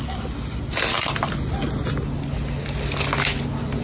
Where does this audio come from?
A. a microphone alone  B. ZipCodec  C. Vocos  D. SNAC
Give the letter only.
A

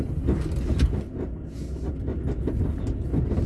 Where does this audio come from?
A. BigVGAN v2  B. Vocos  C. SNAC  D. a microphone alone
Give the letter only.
D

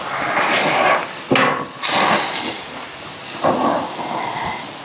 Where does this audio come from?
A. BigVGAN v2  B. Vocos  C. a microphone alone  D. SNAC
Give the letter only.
C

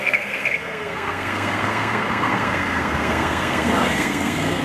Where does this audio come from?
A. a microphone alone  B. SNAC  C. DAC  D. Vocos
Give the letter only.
B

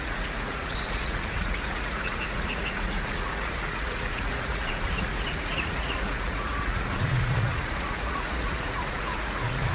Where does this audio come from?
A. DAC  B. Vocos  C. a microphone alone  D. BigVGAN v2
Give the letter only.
B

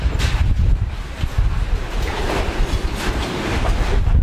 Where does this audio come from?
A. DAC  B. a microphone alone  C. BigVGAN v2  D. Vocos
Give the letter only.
B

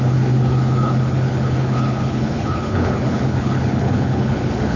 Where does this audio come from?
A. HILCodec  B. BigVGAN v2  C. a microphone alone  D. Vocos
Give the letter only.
A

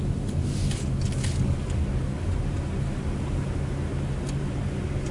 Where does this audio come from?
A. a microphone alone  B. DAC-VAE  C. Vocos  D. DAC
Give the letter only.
A